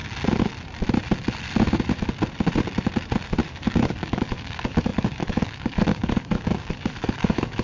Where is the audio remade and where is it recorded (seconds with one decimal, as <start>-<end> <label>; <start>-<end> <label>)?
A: 0.0-3.5 recorded; 3.5-7.6 remade